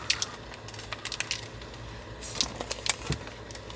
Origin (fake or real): real